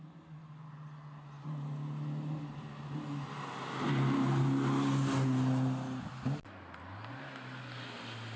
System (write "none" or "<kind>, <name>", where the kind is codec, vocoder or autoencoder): none